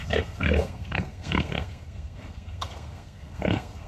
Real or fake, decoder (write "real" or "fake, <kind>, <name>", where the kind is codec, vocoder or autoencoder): fake, codec, SNAC